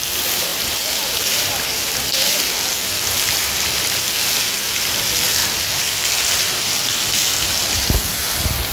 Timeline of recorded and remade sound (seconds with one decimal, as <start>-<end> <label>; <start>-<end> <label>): 0.0-8.7 recorded